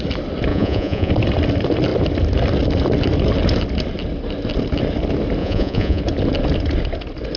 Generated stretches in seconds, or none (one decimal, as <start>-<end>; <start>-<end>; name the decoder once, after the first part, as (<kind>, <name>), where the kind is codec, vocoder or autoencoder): 0.5-1.1 (vocoder, Vocos); 5.4-6.0